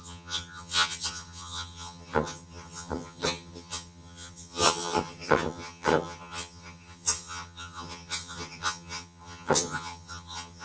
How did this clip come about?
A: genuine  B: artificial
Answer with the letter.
B